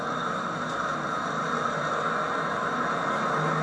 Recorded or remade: recorded